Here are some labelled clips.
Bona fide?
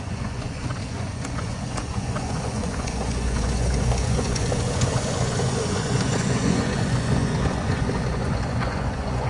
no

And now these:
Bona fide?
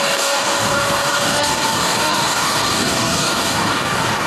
no